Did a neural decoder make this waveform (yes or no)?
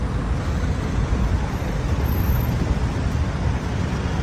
no